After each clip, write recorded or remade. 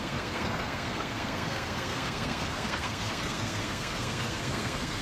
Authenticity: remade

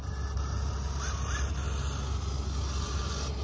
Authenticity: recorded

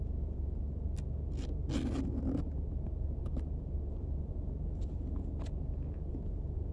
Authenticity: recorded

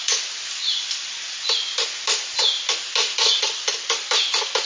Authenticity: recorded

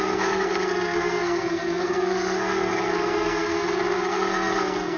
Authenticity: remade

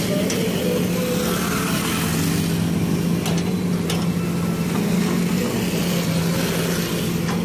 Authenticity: recorded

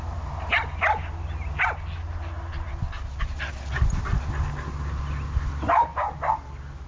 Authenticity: recorded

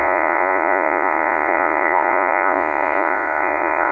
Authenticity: remade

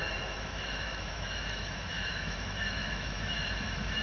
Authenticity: remade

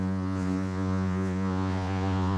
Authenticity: remade